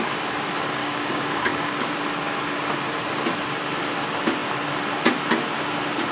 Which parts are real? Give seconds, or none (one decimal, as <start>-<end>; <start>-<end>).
0.0-0.8; 2.0-6.1